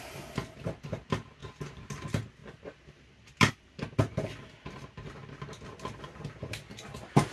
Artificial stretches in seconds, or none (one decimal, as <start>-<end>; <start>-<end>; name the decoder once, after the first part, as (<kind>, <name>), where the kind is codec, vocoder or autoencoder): none